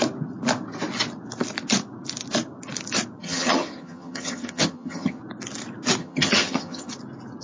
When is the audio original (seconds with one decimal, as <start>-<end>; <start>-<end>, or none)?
0.0-3.2; 5.2-6.0; 6.9-7.4